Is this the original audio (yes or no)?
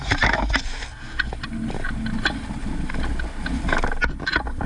yes